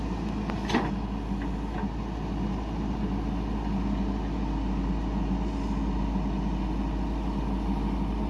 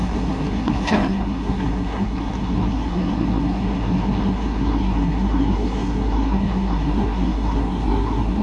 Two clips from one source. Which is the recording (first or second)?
first